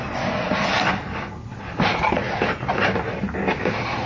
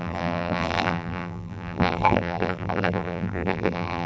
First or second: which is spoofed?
second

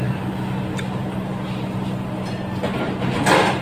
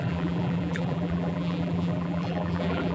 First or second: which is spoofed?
second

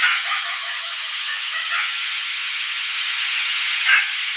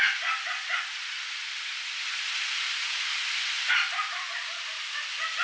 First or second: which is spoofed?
first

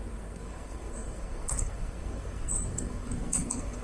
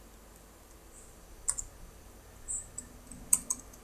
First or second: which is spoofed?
first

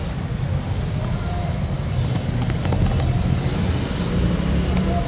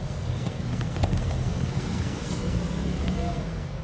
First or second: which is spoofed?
second